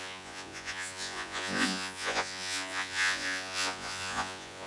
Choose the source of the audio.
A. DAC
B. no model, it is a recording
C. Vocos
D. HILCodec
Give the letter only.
C